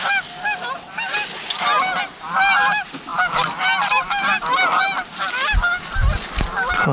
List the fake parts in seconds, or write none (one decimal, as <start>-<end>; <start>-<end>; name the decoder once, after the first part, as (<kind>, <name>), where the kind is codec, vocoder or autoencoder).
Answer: none